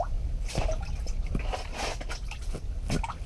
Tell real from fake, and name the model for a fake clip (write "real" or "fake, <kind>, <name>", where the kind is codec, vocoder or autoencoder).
real